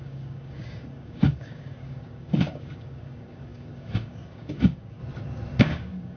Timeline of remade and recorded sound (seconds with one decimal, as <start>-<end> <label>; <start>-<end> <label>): 0.0-5.0 remade; 5.0-5.6 recorded; 5.6-6.2 remade